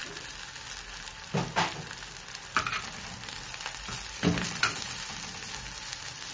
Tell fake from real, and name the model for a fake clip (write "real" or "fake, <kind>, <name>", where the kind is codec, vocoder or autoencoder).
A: real